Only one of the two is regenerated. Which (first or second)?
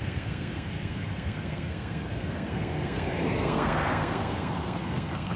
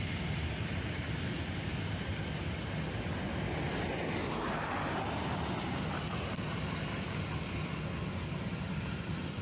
first